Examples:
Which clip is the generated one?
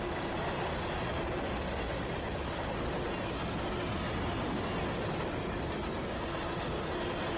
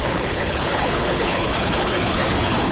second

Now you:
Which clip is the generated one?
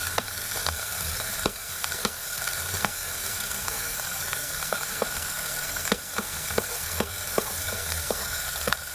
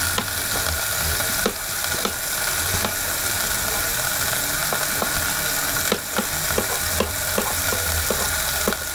first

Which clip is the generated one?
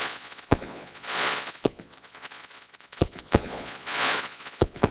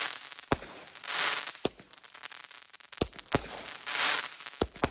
first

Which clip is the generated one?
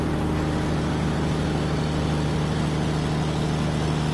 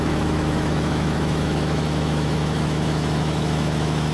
second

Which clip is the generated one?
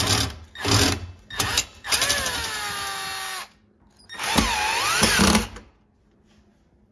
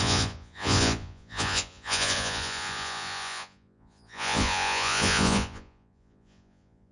second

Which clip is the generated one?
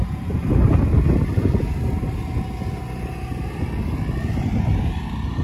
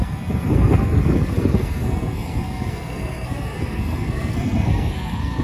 second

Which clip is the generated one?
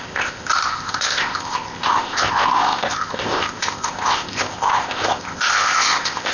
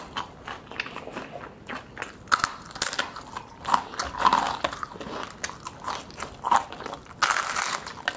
first